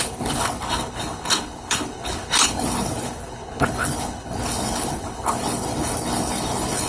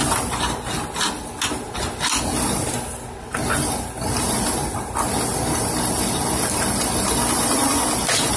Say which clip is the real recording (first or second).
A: second